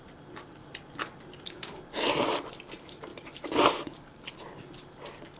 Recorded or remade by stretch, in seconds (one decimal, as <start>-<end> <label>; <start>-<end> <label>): 0.0-3.1 recorded; 3.1-4.3 remade; 4.3-5.4 recorded

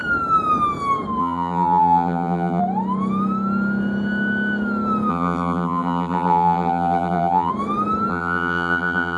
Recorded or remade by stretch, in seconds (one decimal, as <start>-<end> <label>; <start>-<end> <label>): 0.0-1.2 recorded; 1.2-2.6 remade; 2.6-5.1 recorded; 5.1-7.5 remade; 7.5-8.1 recorded; 8.1-9.2 remade

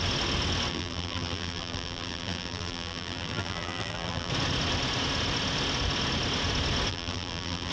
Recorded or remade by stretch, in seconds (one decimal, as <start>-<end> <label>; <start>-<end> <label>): 0.0-0.7 recorded; 0.7-4.3 remade; 4.3-6.9 recorded; 6.9-7.7 remade

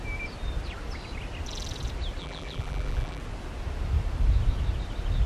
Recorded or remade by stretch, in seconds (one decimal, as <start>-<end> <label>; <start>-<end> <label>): 0.0-2.2 recorded; 2.2-3.2 remade; 3.2-5.3 recorded

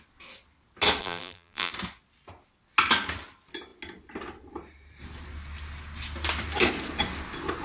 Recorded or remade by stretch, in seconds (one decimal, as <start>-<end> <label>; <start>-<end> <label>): 0.0-1.0 recorded; 1.0-1.7 remade; 1.7-7.6 recorded